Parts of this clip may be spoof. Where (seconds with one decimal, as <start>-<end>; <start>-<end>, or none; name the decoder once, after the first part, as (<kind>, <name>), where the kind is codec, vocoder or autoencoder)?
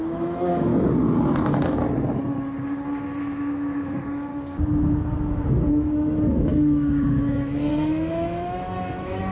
0.0-0.7 (autoencoder, DAC-VAE); 3.2-4.3; 5.7-9.3